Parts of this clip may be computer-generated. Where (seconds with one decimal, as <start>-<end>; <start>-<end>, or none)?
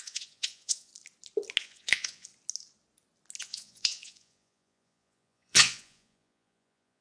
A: 0.0-0.9; 1.6-2.3; 3.4-7.0